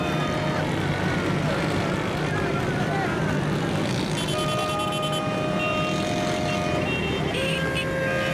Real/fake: real